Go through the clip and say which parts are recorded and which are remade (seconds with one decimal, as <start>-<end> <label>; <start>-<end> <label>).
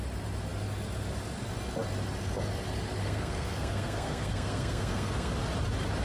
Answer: 0.0-3.0 recorded; 3.0-5.3 remade; 5.3-6.0 recorded